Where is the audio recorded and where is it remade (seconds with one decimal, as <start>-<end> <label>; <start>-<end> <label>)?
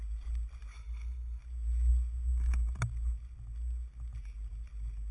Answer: 0.0-0.7 recorded; 0.7-1.4 remade; 1.4-5.1 recorded